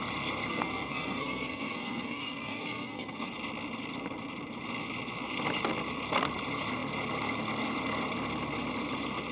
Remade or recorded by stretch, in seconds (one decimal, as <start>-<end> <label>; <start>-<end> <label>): 0.0-0.5 recorded; 0.5-3.3 remade; 3.3-9.3 recorded